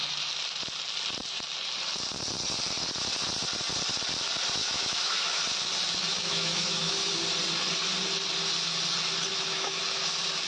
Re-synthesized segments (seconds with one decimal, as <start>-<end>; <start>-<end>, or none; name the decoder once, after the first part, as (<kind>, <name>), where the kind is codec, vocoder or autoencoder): 4.6-5.4 (autoencoder, DAC-VAE); 6.1-7.1; 9.3-9.8